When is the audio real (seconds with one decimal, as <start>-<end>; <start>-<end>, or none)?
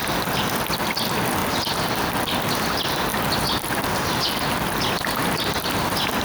0.0-1.4; 2.5-6.2